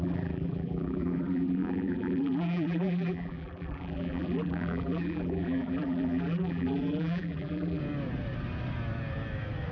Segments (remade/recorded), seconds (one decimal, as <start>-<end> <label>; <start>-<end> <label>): 0.0-7.8 remade; 7.8-9.7 recorded